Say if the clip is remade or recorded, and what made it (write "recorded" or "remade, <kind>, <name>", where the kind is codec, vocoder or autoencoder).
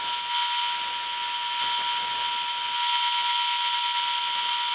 recorded